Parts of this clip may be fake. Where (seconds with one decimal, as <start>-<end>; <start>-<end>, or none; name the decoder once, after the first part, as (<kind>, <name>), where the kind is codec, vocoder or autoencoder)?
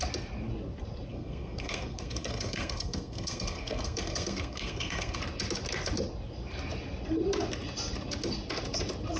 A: 1.1-5.2 (codec, SNAC)